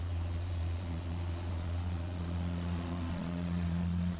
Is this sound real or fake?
fake